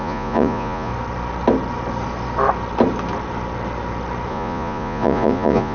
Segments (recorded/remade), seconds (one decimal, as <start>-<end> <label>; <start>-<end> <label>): 0.0-0.9 remade; 0.9-4.3 recorded; 4.3-5.7 remade